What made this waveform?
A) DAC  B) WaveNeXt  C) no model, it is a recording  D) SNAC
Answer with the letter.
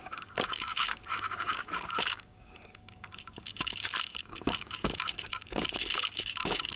A